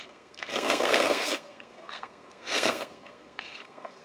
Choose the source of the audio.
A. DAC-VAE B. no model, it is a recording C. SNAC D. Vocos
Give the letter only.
C